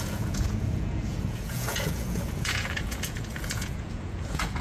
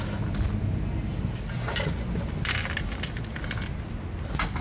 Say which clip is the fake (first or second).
first